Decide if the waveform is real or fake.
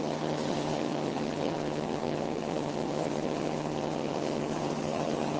fake